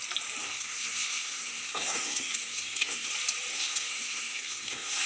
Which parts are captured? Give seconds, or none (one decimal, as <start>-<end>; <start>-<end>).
0.0-0.4; 3.1-3.5